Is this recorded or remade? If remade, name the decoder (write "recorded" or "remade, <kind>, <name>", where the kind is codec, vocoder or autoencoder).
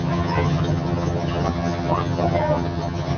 remade, vocoder, HiFi-GAN